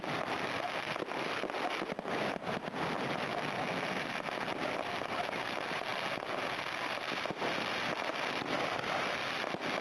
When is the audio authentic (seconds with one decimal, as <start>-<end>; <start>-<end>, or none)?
0.0-9.8

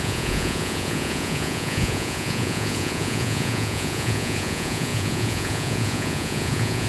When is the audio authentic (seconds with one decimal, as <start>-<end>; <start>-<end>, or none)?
none

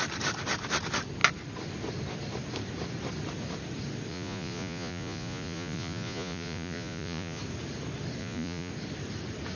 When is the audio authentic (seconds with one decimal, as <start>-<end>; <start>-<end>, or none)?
0.0-4.1; 7.4-8.2; 8.7-9.6

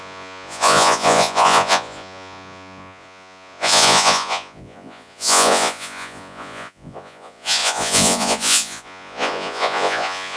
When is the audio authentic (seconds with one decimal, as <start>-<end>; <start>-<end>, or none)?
none

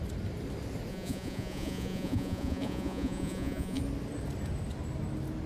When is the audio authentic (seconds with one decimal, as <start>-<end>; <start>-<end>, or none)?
0.0-0.9; 3.8-5.5

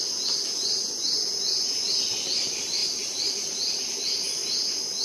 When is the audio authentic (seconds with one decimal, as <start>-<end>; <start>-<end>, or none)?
0.0-0.6; 1.9-5.0

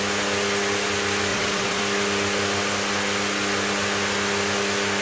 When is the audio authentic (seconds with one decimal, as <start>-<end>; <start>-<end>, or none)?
0.0-1.3; 1.8-5.0

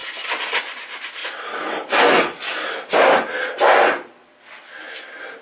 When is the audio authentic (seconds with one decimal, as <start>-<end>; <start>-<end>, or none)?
0.0-5.4